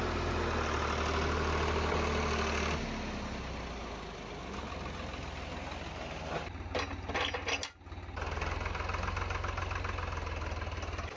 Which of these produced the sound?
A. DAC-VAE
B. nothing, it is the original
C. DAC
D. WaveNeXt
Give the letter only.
B